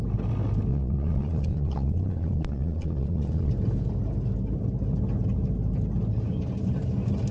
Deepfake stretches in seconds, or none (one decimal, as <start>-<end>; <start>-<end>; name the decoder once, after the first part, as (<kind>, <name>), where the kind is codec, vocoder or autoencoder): 0.7-3.5 (vocoder, Vocos)